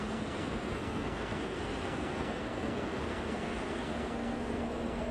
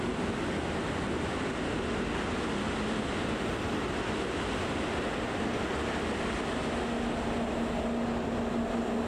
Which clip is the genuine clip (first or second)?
second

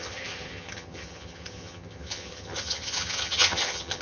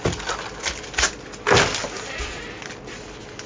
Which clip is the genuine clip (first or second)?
second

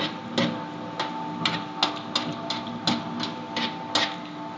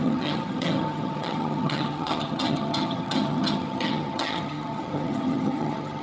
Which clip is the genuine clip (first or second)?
first